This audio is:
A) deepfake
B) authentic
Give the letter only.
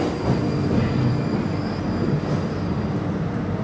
B